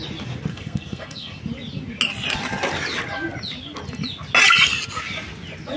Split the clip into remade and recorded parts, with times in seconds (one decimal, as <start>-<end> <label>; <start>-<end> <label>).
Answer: 0.0-0.5 recorded; 0.5-1.4 remade; 1.4-5.8 recorded